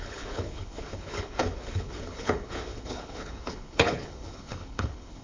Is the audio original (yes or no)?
no